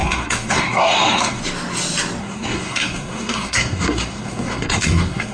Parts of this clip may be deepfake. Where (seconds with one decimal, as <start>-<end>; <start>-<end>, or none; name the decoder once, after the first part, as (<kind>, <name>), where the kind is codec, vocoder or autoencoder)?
0.0-1.4 (codec, SNAC); 2.2-5.3